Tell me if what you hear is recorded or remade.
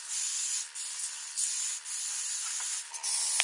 recorded